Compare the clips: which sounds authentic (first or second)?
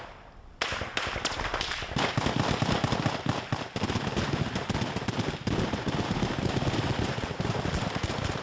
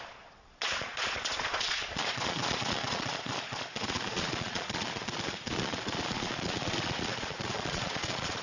first